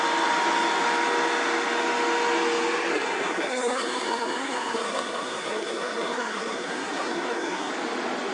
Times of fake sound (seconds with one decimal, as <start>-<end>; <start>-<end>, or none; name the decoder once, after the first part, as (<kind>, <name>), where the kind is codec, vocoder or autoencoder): 2.9-7.7 (codec, SNAC)